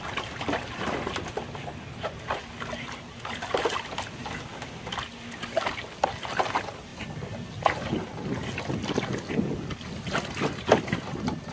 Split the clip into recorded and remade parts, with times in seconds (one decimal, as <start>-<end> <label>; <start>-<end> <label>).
0.0-11.5 recorded